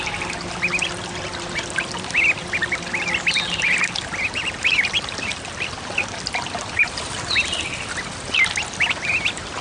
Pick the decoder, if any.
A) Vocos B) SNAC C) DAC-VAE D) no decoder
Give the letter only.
D